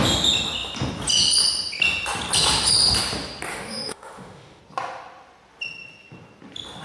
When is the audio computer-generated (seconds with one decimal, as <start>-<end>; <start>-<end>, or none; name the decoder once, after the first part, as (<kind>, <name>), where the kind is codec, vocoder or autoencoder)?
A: 3.5-4.6 (autoencoder, DAC-VAE)